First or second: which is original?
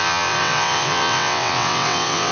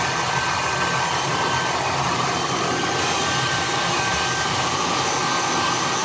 second